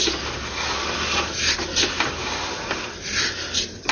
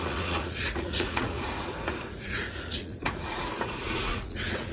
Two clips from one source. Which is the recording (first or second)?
first